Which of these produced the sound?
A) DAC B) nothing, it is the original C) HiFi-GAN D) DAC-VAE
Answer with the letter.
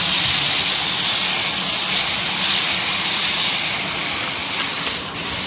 B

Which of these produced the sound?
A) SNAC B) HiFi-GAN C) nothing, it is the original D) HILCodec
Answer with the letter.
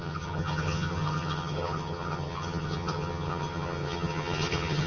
B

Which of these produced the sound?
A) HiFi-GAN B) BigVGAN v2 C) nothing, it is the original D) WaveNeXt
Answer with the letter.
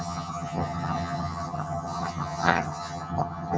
A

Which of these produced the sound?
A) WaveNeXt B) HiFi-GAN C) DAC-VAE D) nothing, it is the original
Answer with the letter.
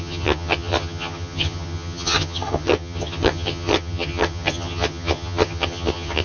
B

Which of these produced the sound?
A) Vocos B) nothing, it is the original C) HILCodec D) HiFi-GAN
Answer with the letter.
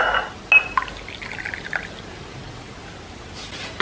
B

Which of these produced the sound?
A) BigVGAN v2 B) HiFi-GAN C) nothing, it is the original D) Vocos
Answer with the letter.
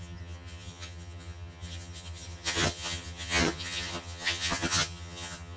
B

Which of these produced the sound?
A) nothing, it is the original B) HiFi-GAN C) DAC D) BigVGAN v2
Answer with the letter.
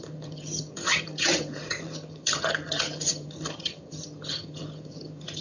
B